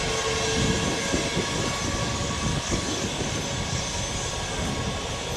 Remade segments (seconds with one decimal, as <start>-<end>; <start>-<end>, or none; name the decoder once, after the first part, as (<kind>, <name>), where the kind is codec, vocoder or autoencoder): 2.0-3.4 (codec, DAC)